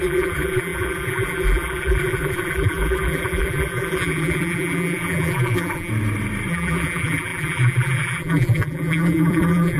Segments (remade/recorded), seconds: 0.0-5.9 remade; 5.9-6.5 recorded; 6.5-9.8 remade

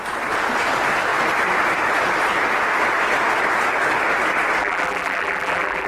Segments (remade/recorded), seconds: 0.0-4.6 recorded; 4.6-5.9 remade

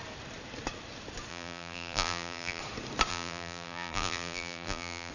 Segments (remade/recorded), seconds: 0.0-1.3 recorded; 1.3-2.6 remade; 2.6-3.1 recorded; 3.1-5.1 remade

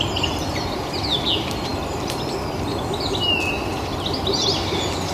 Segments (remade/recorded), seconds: 0.0-1.7 remade; 1.7-5.1 recorded

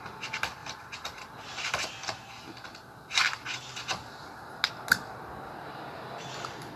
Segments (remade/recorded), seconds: 0.0-6.8 recorded

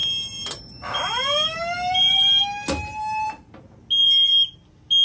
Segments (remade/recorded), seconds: 0.0-2.4 remade; 2.4-2.9 recorded; 2.9-3.5 remade; 3.5-4.0 recorded; 4.0-4.6 remade; 4.6-5.0 recorded

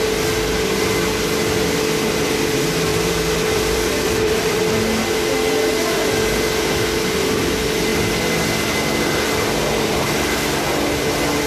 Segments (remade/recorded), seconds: 0.0-2.9 recorded; 2.9-4.6 remade; 4.6-11.5 recorded